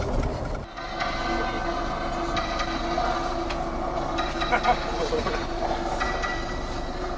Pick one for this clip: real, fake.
real